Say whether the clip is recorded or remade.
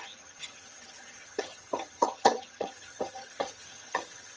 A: remade